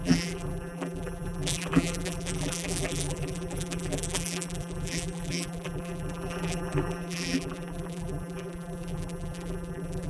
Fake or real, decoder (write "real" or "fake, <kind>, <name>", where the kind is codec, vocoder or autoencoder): fake, vocoder, BigVGAN v2